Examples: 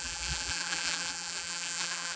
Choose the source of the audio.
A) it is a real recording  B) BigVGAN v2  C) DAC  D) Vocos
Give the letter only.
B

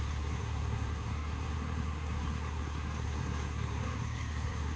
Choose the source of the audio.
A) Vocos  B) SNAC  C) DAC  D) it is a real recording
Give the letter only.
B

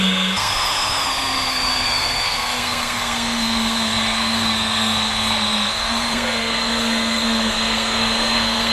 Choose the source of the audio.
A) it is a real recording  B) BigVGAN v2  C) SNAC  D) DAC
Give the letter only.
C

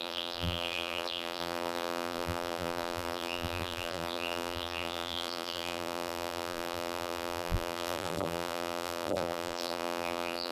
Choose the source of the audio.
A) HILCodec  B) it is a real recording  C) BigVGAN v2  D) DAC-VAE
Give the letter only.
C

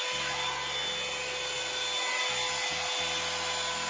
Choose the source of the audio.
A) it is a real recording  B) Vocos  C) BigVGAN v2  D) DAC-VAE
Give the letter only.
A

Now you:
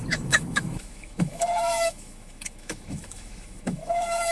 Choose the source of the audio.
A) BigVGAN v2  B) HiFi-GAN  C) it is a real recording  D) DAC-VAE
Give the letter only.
D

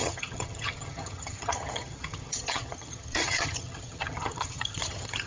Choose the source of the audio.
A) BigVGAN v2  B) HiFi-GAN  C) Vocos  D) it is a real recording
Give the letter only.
B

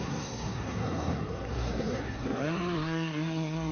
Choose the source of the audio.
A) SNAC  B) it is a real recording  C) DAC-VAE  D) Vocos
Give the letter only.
A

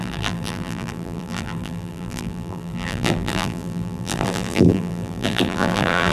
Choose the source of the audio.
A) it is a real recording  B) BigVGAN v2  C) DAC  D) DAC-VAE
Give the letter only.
B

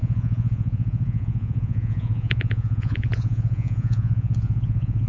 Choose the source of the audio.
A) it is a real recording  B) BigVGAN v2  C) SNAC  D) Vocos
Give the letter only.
D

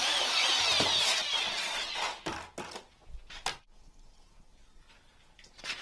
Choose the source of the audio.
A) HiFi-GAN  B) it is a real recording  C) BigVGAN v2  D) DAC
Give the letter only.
B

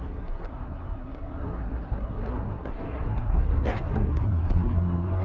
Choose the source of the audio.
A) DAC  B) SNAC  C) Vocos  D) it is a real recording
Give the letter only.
B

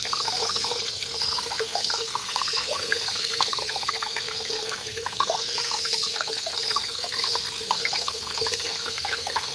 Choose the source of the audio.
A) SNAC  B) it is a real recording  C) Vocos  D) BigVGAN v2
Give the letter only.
A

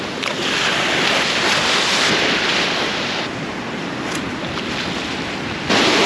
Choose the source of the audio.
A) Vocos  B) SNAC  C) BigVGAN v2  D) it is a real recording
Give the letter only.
D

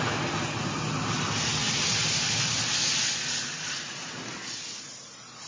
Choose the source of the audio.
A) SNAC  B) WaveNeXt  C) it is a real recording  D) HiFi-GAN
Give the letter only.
C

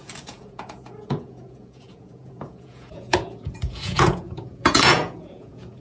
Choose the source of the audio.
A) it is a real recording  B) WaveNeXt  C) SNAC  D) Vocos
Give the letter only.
D